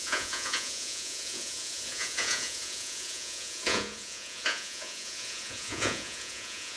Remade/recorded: remade